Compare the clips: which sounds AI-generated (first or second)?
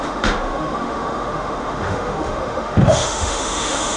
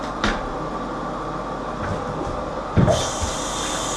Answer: first